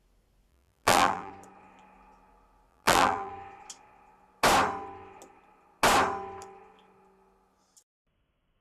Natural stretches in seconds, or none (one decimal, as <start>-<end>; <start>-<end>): 0.0-0.5; 1.3-2.7; 3.3-8.6